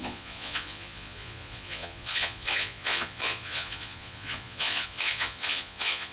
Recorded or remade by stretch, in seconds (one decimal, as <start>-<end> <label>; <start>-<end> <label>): 0.0-6.1 remade